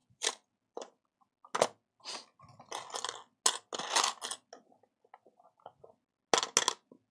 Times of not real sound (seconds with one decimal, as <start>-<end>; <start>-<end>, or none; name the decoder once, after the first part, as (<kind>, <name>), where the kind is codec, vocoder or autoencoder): none